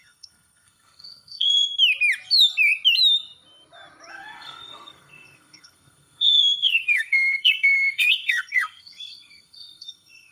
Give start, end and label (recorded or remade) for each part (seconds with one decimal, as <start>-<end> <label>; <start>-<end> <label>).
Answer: 0.0-1.7 remade; 1.7-4.1 recorded; 4.1-10.3 remade